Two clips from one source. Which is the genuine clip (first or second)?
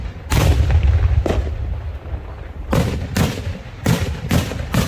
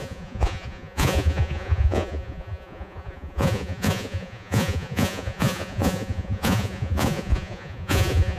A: first